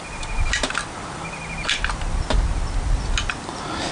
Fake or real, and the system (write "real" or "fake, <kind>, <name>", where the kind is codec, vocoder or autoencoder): real